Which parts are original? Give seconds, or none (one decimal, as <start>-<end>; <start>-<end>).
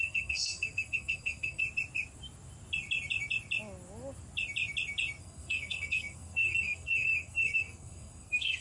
1.6-5.2